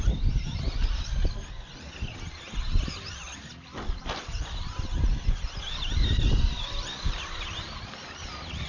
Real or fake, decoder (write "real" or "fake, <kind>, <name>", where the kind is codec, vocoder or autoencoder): real